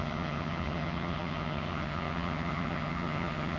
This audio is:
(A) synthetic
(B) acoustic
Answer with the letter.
A